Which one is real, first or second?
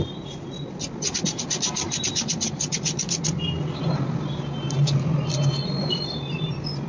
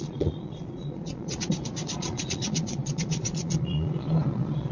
first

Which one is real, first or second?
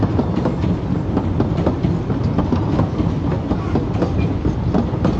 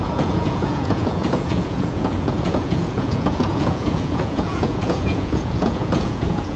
first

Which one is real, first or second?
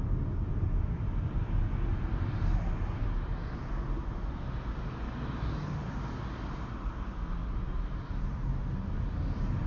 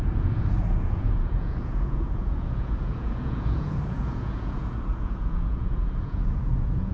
first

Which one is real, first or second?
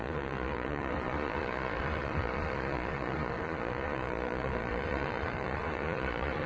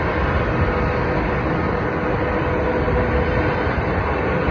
second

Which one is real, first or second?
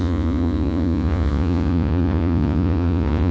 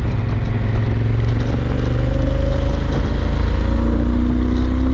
second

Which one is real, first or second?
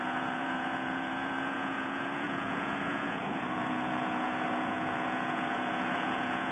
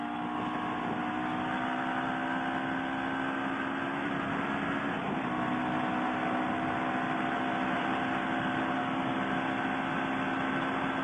second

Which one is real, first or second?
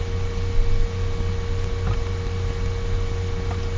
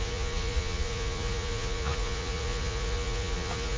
first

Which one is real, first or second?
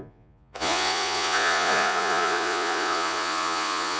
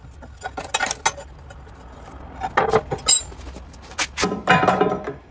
second